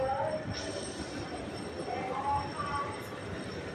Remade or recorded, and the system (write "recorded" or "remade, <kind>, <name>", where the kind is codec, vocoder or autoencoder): recorded